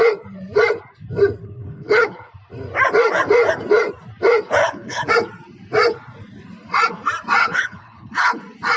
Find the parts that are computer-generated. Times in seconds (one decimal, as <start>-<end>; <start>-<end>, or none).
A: 1.4-2.3; 4.6-5.1; 7.4-8.4